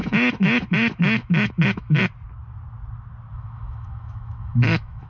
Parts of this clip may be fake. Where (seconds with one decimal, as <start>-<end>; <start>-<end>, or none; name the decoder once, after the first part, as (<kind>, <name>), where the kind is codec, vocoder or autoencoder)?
0.0-2.0 (autoencoder, DAC-VAE); 3.3-5.1